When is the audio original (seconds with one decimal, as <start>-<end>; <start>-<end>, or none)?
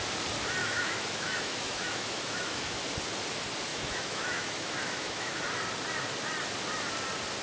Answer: 0.0-0.6; 2.8-3.7; 5.4-7.4